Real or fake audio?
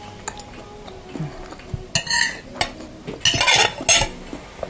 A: real